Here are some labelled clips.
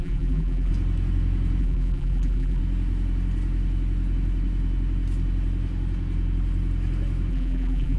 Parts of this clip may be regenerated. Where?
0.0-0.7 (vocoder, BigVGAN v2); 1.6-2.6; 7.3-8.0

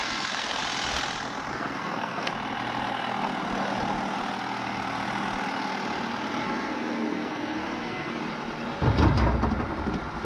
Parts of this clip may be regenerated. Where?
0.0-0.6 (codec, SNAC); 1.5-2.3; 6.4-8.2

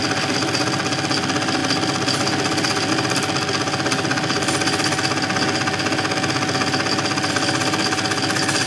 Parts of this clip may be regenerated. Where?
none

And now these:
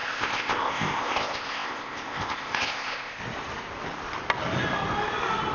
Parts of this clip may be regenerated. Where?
0.0-3.2 (codec, ZipCodec)

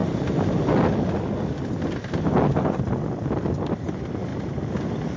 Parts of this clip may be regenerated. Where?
none